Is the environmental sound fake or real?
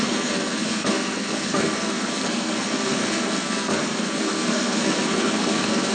fake